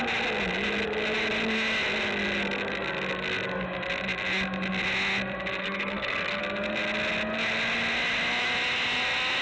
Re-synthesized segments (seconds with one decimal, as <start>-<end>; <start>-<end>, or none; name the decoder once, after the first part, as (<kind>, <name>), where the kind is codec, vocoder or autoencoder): 5.6-6.4 (codec, SNAC)